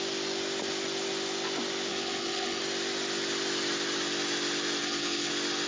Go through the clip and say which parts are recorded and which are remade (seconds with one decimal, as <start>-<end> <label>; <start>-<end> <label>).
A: 0.0-1.9 recorded; 1.9-2.6 remade; 2.6-4.8 recorded; 4.8-5.3 remade; 5.3-5.7 recorded